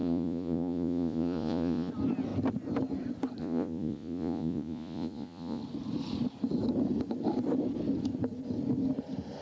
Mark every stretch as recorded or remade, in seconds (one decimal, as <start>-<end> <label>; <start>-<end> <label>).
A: 0.0-1.9 remade; 1.9-3.4 recorded; 3.4-5.6 remade; 5.6-9.4 recorded

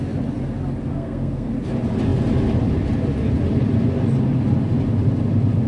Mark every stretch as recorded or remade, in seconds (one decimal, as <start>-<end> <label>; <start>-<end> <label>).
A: 0.0-0.9 recorded; 0.9-1.5 remade; 1.5-5.7 recorded